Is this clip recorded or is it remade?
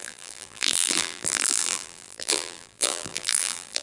remade